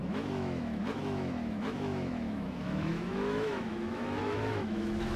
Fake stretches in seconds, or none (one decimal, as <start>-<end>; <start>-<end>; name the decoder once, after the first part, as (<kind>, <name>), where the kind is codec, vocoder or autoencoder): 0.0-5.2 (autoencoder, DAC-VAE)